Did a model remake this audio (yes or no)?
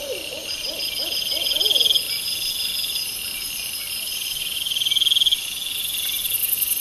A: no